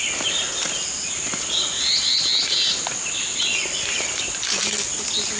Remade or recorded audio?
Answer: recorded